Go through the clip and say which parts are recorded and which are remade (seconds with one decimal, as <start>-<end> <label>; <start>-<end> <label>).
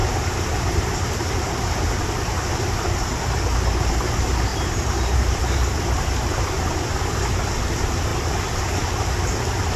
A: 0.0-4.5 recorded; 4.5-7.0 remade; 7.0-9.8 recorded